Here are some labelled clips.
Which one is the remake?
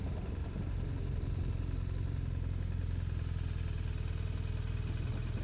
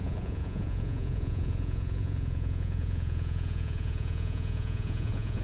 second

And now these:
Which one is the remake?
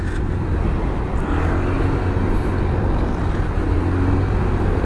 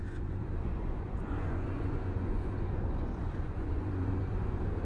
second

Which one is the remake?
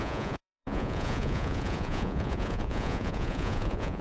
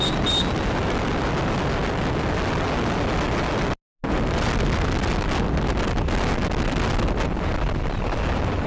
first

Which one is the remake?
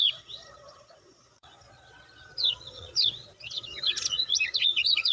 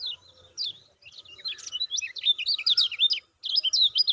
first